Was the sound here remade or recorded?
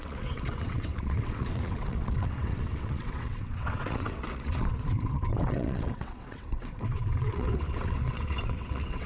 remade